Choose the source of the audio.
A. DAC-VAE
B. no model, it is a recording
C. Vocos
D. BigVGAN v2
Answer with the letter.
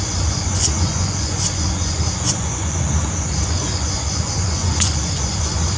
C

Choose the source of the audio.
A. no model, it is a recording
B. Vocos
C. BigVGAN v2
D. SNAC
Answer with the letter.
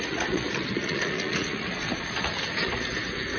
B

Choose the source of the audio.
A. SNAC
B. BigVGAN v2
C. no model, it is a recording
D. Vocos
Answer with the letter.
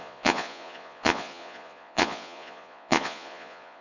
D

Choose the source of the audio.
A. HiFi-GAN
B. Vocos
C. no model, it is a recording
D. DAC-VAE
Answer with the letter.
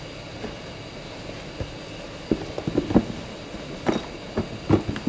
C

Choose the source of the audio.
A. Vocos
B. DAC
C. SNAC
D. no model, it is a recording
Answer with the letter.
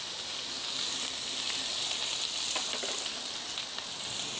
D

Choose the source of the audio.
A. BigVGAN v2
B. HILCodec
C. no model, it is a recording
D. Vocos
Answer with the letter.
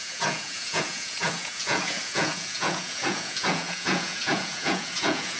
D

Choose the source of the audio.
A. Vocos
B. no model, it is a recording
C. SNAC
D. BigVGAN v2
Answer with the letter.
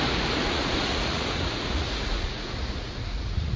A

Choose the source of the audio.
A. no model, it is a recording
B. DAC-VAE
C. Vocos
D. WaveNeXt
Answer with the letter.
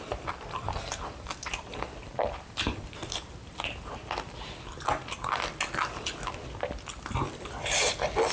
A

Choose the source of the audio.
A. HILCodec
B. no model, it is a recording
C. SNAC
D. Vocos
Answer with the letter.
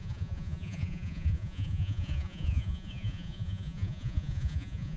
D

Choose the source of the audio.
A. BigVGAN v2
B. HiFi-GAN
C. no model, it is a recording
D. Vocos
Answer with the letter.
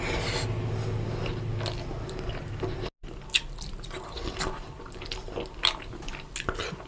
C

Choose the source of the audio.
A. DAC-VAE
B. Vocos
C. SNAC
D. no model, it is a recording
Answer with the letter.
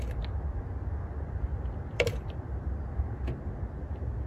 D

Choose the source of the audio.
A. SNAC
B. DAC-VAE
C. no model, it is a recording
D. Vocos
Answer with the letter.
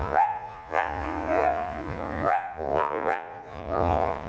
D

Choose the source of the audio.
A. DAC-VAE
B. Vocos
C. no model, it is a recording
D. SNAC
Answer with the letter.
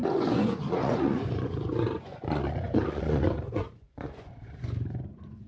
B